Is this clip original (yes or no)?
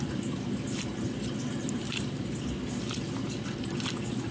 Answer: yes